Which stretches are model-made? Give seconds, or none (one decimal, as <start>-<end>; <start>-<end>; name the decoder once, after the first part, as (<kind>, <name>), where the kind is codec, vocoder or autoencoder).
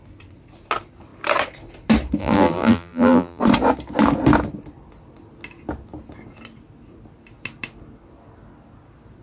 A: 2.2-3.4 (vocoder, BigVGAN v2)